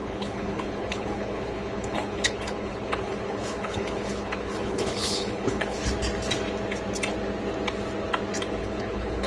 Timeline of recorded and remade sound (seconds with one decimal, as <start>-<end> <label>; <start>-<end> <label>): 0.0-5.8 remade; 5.8-8.6 recorded; 8.6-9.3 remade